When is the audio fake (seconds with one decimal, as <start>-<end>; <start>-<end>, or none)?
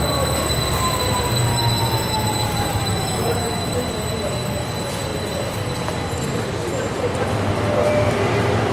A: 1.5-3.9